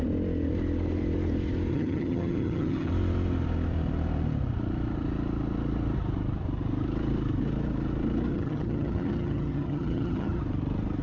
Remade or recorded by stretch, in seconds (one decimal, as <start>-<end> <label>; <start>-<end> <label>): 0.0-1.7 recorded; 1.7-2.9 remade; 2.9-8.3 recorded; 8.3-10.4 remade; 10.4-11.0 recorded